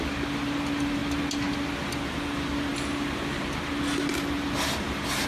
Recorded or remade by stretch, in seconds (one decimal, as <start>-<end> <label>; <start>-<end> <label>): 0.0-5.3 recorded